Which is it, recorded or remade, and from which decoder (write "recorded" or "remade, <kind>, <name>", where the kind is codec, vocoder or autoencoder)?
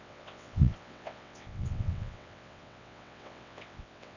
remade, vocoder, WaveNeXt